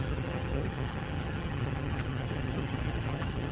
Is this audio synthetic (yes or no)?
yes